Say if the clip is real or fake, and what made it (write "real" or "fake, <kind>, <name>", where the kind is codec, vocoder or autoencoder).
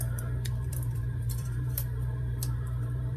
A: fake, vocoder, BigVGAN v2